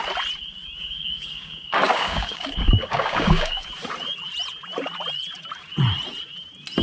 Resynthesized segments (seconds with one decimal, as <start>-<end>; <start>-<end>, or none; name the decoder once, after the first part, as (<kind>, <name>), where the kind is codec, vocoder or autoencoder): 0.8-3.7 (codec, DAC)